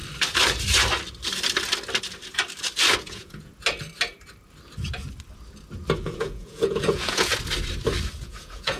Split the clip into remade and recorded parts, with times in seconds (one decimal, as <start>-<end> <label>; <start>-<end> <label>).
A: 0.0-3.0 recorded; 3.0-3.5 remade; 3.5-6.0 recorded; 6.0-7.3 remade; 7.3-8.2 recorded; 8.2-8.8 remade